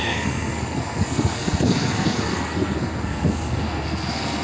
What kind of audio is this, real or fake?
fake